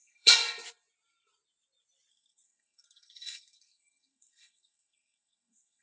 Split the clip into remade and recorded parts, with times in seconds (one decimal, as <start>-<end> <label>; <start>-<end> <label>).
0.0-0.4 remade; 0.4-2.1 recorded; 2.1-5.8 remade